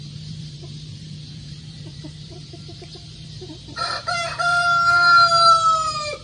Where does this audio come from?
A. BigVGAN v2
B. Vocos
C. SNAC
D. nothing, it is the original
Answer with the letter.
A